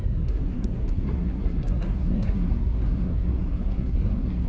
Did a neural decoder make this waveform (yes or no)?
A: yes